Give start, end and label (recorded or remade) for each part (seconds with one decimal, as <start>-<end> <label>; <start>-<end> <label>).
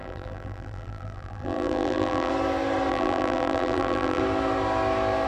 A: 0.0-2.3 remade; 2.3-2.9 recorded; 2.9-4.2 remade; 4.2-5.3 recorded